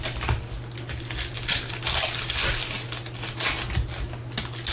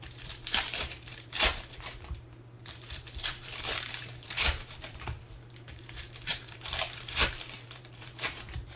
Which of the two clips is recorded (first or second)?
first